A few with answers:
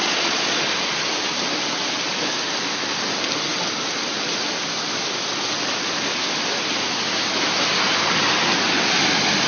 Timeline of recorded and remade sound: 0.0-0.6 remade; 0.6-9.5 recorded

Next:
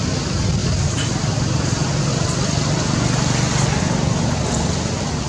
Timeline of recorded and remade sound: 0.0-5.3 recorded